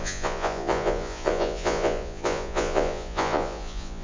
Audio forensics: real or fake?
fake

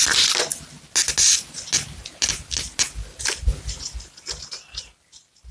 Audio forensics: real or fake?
real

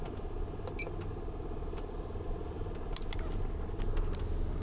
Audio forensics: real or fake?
real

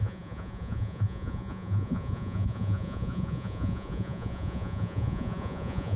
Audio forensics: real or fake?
fake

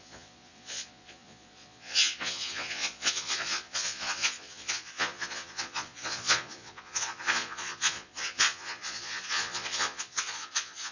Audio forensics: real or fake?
fake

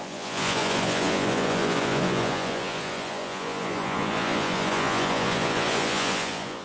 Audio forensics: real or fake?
fake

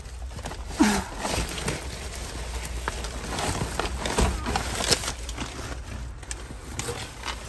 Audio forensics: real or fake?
real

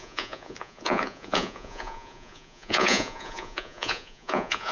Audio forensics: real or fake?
fake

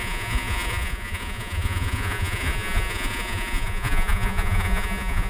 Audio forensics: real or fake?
fake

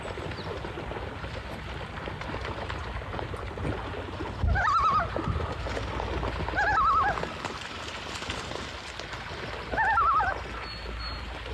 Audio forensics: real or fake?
real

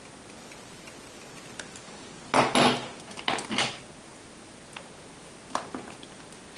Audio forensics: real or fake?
real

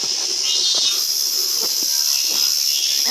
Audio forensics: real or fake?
real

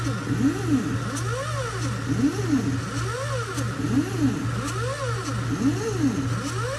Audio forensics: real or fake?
real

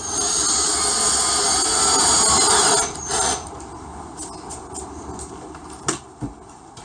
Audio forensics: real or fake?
real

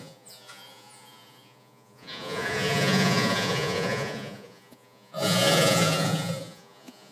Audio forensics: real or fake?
fake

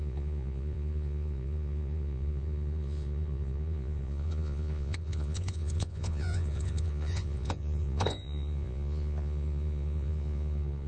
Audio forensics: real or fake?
fake